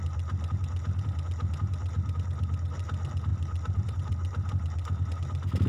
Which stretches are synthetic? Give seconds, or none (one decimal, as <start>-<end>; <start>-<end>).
3.3-4.5